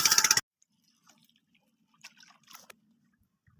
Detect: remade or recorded recorded